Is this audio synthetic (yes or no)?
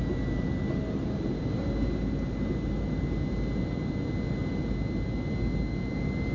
no